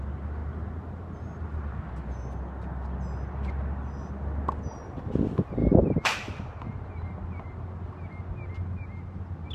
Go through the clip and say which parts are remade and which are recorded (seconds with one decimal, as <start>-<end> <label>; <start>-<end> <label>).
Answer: 0.0-5.6 recorded; 5.6-6.4 remade; 6.4-9.5 recorded